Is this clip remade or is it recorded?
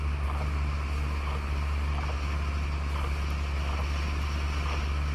recorded